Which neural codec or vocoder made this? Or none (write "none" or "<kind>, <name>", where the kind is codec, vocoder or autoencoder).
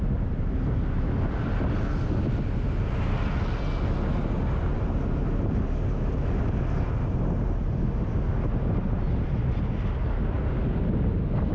none